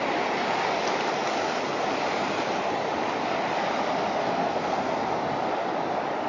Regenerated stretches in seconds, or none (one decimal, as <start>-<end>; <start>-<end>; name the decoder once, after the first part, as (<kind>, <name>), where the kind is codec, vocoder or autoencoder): 4.2-5.0 (codec, SNAC)